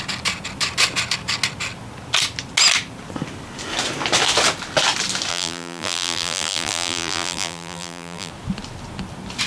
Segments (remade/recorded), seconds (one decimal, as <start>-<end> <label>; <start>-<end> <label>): 0.0-5.3 recorded; 5.3-8.3 remade; 8.3-9.5 recorded